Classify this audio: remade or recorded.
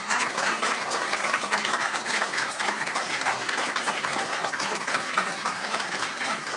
remade